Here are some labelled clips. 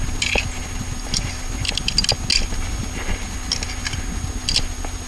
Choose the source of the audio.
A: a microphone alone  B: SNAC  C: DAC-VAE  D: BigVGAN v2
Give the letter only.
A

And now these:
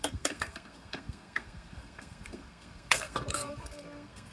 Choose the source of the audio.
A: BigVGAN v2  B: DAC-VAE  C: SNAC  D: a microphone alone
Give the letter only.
C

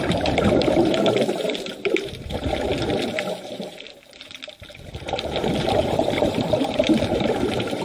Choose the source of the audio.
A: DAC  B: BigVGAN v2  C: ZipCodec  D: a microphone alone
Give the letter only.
B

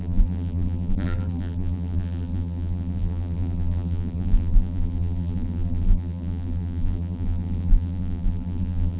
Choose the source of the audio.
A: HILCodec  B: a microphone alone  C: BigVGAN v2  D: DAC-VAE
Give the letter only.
C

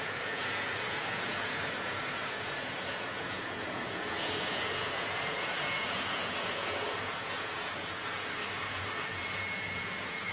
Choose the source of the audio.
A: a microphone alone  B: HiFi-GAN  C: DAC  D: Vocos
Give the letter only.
D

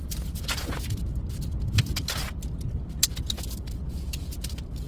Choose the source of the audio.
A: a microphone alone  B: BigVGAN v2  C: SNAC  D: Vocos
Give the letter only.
B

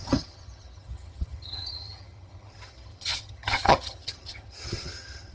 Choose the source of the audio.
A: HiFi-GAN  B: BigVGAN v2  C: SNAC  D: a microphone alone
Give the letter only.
A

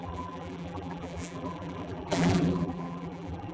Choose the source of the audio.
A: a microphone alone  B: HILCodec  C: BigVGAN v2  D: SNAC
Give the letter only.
C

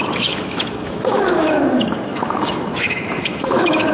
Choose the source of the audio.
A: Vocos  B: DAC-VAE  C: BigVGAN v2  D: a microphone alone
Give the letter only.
B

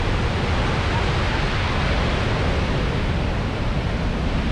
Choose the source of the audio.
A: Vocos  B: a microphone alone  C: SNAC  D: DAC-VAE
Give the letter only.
B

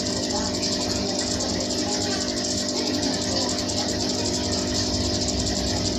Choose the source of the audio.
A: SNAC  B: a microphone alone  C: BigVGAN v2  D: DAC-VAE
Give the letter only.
B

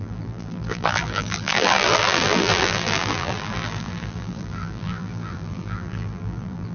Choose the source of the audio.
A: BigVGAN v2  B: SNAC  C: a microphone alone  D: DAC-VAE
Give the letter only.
A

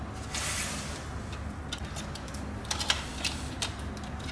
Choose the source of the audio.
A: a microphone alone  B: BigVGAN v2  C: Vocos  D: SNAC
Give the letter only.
A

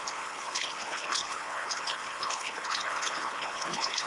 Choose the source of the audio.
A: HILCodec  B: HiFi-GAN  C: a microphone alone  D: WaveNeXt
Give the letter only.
A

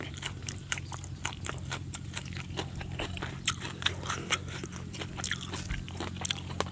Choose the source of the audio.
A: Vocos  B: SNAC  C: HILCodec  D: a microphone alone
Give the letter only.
D